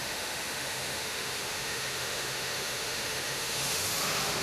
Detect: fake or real fake